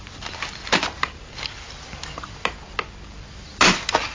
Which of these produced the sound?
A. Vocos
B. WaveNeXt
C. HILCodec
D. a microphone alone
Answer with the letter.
D